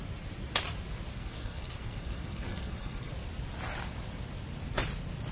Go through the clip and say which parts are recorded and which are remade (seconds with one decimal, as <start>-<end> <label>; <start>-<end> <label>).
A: 0.0-1.1 recorded; 1.1-3.1 remade; 3.1-5.3 recorded